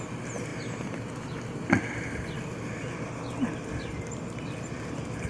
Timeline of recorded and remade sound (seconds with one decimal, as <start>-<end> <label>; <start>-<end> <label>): 0.0-5.3 recorded